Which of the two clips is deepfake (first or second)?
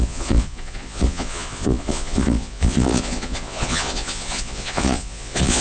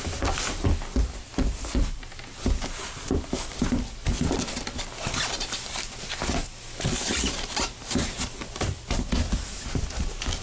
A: first